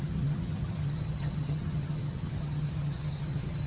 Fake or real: fake